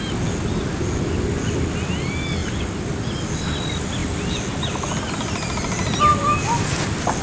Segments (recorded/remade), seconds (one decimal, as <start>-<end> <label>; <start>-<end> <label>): 0.0-7.2 recorded